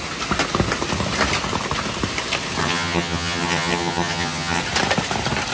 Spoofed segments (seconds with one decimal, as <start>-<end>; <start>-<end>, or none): 2.6-4.6